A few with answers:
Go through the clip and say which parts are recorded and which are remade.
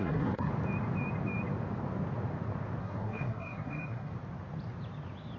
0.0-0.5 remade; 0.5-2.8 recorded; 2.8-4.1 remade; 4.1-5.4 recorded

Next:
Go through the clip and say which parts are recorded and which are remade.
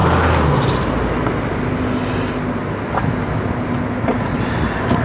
0.0-5.0 recorded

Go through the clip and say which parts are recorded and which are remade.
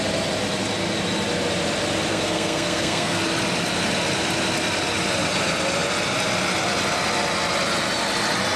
0.0-2.1 recorded; 2.1-3.2 remade; 3.2-8.6 recorded